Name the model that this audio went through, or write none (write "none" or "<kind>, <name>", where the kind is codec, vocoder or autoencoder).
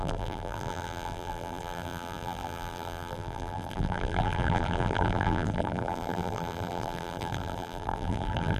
vocoder, BigVGAN v2